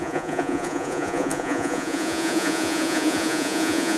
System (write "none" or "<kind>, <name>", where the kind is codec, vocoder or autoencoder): vocoder, Vocos